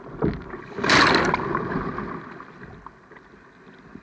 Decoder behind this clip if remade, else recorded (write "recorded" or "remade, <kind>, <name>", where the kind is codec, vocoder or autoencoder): recorded